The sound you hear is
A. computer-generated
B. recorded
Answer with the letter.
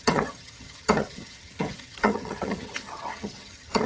A